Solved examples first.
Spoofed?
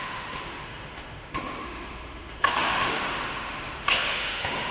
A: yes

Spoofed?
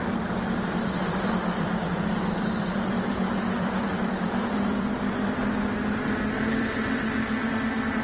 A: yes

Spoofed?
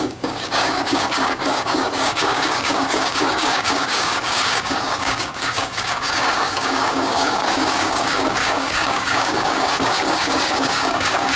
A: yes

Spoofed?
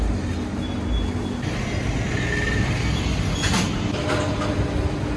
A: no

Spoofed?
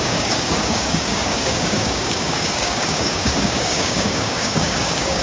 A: yes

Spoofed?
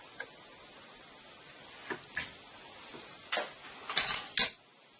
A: no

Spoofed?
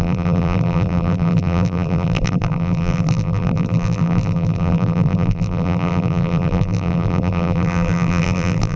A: yes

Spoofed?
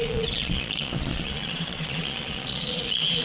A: yes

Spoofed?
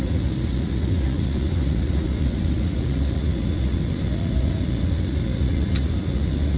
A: yes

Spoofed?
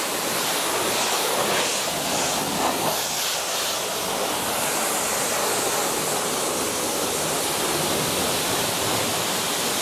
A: no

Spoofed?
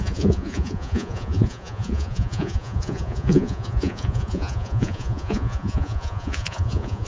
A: yes